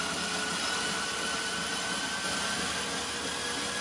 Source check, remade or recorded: recorded